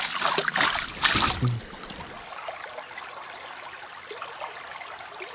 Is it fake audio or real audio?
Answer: real